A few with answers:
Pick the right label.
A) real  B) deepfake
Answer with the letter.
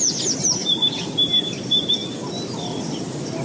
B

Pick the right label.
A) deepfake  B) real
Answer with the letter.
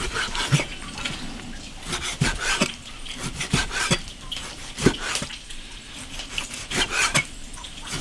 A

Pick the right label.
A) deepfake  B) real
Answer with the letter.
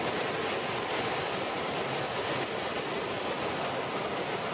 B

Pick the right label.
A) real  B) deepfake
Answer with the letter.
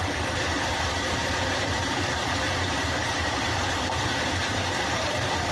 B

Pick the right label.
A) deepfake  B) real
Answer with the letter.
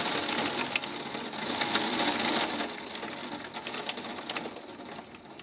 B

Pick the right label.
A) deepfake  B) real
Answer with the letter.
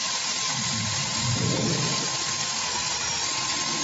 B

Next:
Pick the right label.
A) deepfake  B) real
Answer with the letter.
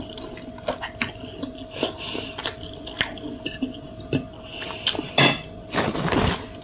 B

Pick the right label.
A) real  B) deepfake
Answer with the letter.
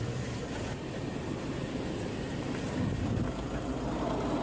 A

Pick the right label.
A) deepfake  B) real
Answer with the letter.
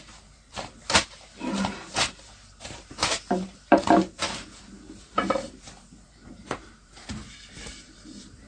A